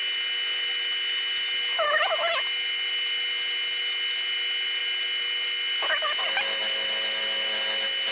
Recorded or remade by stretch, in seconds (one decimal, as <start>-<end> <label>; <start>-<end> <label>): 0.0-8.1 recorded